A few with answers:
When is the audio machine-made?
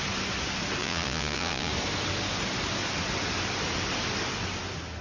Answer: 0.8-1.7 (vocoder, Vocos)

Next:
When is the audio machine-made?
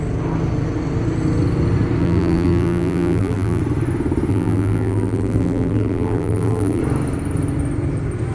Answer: 2.0-3.6 (vocoder, BigVGAN v2); 4.3-6.8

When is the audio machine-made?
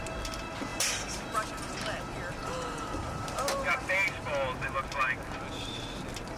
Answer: none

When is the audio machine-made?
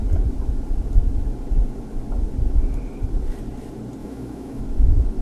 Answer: 4.0-4.6 (autoencoder, DAC-VAE)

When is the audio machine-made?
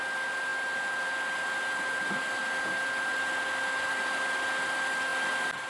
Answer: 5.1-5.7 (vocoder, BigVGAN v2)